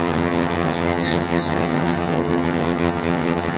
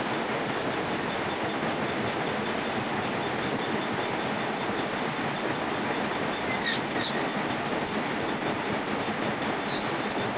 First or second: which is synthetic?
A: first